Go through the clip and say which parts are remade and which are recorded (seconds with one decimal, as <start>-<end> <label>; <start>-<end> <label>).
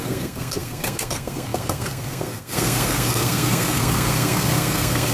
0.0-5.1 remade